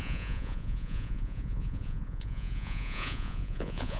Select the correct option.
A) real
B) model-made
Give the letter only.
B